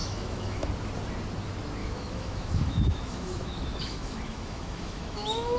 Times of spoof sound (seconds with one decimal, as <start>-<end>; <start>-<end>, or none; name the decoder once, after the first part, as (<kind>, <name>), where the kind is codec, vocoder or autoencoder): 0.0-0.7 (autoencoder, DAC-VAE); 1.8-5.6